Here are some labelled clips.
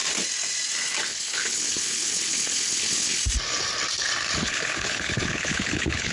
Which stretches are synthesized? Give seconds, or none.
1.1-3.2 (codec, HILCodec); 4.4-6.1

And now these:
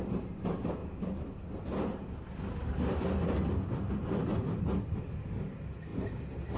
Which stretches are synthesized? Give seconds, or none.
0.8-1.5 (vocoder, BigVGAN v2); 4.2-4.7; 5.9-6.6

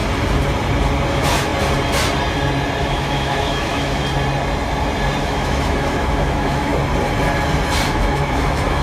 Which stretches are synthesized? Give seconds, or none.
1.1-1.5 (autoencoder, DAC-VAE); 2.8-4.0; 5.2-6.7; 7.9-8.8

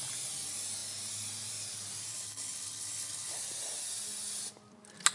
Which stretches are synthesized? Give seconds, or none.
2.1-3.3 (codec, HILCodec)